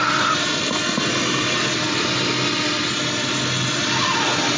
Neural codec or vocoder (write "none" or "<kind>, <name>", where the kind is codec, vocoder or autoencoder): none